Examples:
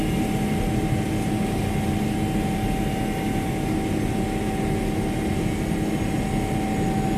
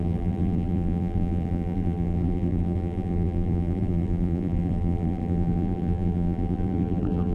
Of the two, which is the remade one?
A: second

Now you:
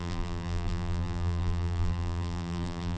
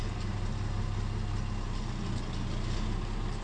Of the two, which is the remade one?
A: first